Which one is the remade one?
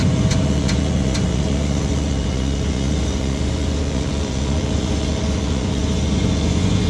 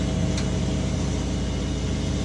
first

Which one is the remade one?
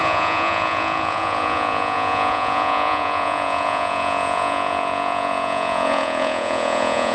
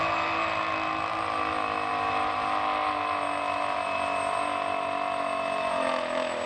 first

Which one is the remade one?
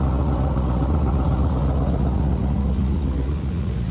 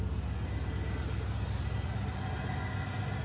first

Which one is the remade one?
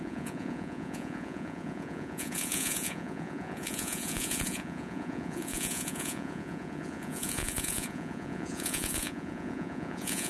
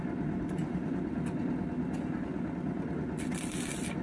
first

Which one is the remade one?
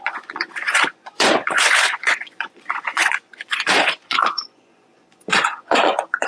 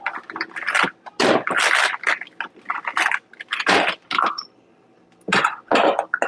first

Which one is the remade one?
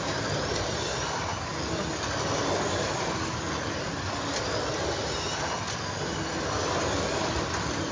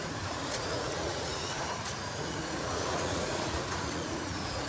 second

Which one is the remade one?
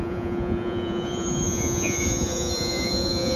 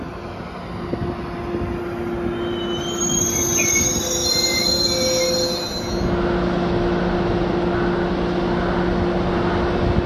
first